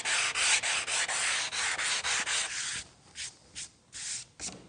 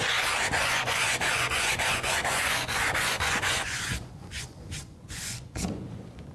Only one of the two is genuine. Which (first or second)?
first